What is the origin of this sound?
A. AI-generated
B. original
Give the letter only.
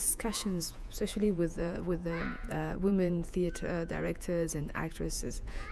A